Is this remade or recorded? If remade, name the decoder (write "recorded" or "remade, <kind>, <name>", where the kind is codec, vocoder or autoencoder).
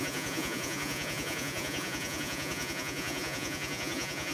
remade, vocoder, Vocos